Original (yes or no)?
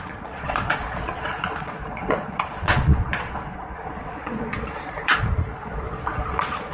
no